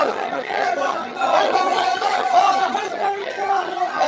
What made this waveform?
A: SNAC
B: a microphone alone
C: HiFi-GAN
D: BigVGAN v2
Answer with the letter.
C